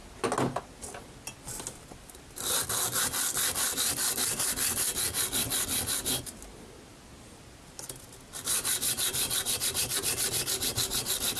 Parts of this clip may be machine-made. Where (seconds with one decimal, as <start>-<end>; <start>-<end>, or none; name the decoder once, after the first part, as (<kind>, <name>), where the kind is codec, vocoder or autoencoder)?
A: none

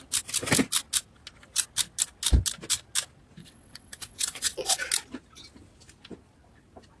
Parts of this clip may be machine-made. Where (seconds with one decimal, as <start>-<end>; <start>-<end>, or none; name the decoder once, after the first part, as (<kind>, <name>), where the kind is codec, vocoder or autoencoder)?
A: 3.4-4.9 (vocoder, WaveNeXt)

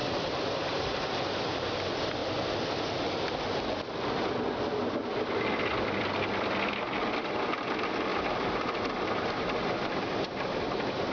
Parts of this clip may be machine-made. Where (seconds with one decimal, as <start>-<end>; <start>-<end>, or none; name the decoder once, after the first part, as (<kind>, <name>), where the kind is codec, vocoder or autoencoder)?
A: 0.0-1.5 (vocoder, BigVGAN v2); 8.1-9.7

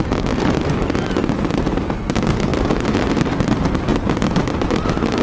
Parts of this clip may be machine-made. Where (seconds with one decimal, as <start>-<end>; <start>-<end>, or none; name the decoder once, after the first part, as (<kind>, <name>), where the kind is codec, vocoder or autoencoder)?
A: 2.5-3.4 (vocoder, BigVGAN v2); 3.9-5.2